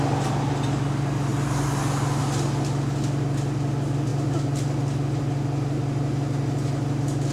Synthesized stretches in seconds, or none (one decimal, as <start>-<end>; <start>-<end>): none